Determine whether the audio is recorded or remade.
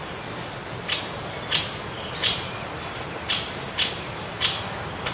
recorded